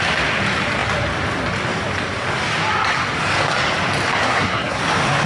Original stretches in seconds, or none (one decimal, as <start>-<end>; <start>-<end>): 0.0-4.2; 4.8-5.3